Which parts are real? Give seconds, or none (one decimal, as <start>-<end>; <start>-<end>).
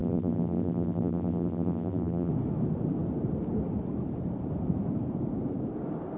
2.3-6.2